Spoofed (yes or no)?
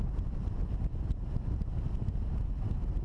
no